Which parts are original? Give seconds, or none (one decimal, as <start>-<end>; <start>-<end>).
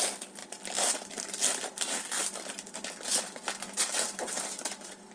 0.0-5.1